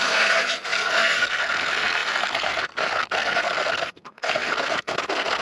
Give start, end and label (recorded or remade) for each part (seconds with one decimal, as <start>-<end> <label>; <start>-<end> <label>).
0.0-5.4 remade